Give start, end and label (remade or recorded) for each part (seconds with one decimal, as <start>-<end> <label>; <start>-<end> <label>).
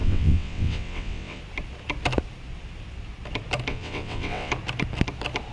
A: 0.0-1.4 remade; 1.4-3.7 recorded; 3.7-4.5 remade; 4.5-5.5 recorded